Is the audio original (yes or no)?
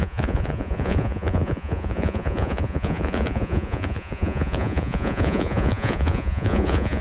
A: no